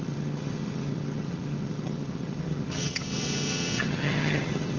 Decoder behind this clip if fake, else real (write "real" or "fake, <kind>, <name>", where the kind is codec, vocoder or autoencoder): fake, vocoder, HiFi-GAN